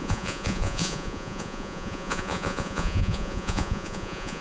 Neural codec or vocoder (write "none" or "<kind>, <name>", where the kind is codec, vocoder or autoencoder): vocoder, Vocos